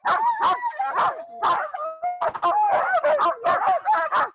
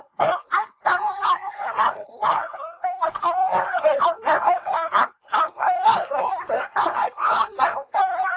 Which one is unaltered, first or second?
first